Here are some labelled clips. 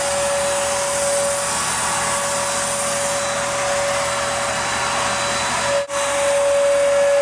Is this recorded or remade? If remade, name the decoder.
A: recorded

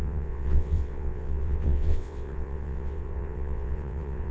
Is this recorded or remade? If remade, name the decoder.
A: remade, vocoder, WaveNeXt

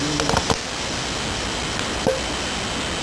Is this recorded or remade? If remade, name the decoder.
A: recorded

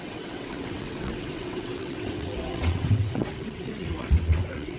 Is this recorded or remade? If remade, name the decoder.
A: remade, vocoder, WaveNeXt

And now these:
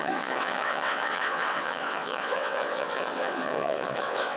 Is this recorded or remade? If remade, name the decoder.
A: remade, vocoder, WaveNeXt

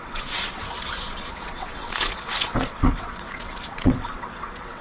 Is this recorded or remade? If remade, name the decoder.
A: remade, vocoder, WaveNeXt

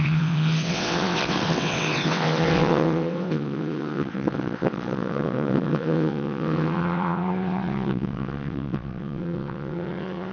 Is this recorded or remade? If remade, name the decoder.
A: remade, vocoder, WaveNeXt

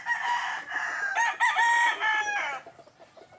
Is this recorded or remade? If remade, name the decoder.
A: recorded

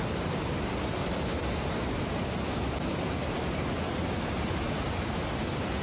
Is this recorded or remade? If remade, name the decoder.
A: recorded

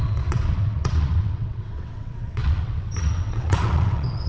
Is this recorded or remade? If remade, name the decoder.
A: remade, vocoder, WaveNeXt